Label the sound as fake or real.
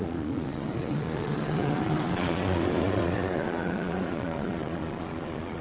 fake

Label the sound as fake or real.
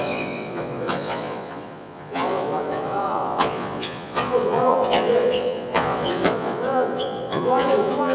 fake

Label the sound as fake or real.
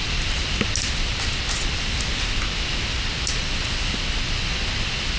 real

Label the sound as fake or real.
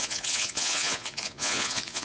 fake